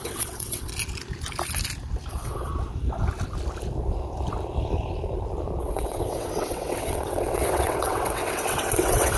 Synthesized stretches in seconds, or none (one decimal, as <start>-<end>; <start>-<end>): 0.0-0.7; 2.1-2.5; 5.6-9.2